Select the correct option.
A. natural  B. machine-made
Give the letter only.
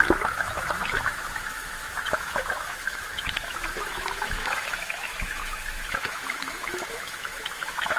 B